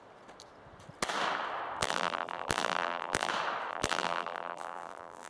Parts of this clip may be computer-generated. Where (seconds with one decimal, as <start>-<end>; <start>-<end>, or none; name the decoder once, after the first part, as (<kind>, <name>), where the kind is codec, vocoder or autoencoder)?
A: 1.8-3.3 (vocoder, BigVGAN v2); 3.7-5.3